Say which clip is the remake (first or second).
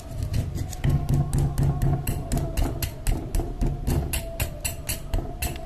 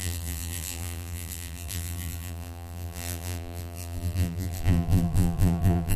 second